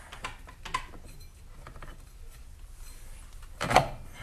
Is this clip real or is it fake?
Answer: real